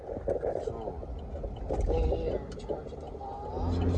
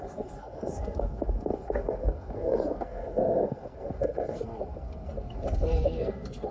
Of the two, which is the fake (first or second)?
second